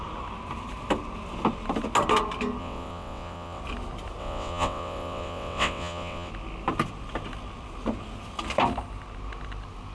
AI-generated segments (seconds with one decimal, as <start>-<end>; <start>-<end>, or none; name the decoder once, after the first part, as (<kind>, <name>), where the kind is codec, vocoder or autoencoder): 2.6-3.6 (vocoder, WaveNeXt); 4.2-6.3